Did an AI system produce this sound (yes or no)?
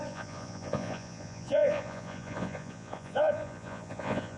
yes